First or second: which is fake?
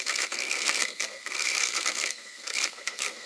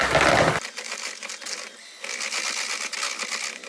first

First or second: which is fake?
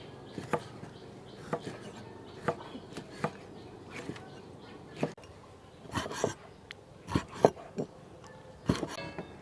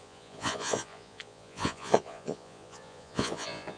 second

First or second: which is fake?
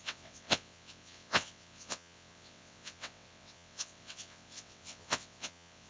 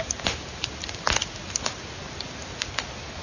first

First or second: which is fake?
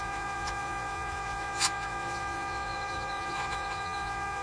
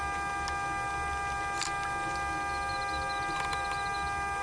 first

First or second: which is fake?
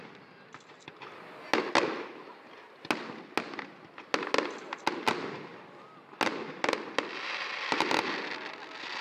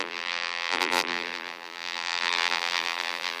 second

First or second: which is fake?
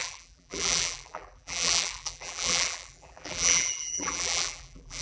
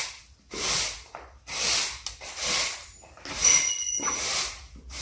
first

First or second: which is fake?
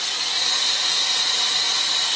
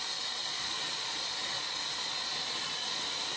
second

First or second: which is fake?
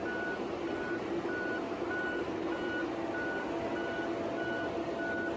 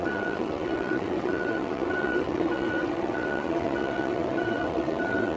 second